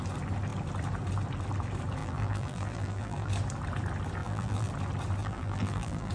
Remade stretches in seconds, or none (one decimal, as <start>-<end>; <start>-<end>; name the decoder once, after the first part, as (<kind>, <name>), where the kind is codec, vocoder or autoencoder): 2.0-3.3 (vocoder, BigVGAN v2); 4.2-4.7; 5.2-6.1